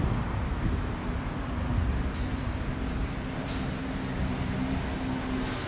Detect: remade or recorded recorded